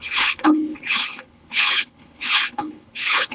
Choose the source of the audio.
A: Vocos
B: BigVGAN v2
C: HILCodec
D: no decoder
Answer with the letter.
C